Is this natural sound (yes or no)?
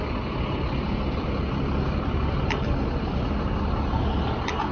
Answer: yes